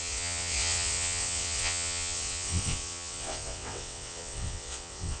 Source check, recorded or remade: remade